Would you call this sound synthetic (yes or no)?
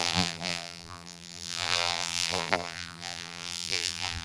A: yes